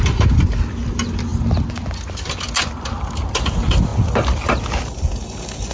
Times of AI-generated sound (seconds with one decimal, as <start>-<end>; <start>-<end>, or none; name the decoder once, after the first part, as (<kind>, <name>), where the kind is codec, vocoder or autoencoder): none

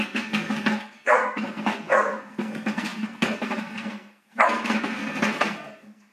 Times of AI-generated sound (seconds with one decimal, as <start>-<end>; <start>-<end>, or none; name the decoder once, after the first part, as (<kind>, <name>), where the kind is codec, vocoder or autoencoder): 0.0-6.1 (codec, SNAC)